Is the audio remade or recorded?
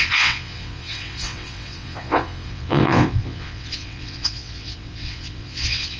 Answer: remade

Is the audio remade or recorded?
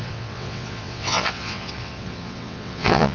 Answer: remade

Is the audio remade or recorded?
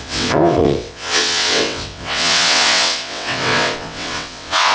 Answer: remade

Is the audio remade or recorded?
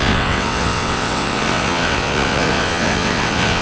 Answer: remade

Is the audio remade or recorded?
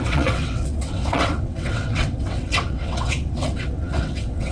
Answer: remade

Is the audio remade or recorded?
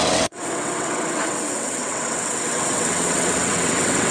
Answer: remade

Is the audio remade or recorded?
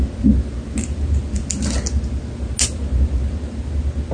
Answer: recorded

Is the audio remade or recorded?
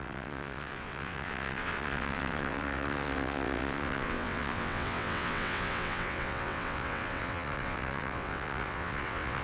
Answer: remade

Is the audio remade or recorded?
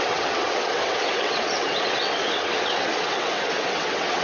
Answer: remade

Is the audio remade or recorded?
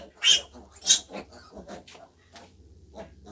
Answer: recorded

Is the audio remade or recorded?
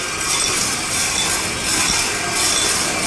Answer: recorded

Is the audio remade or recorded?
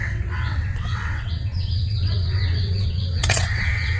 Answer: remade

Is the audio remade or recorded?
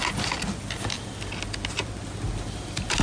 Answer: recorded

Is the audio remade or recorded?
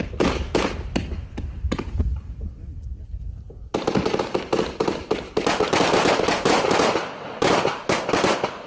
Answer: recorded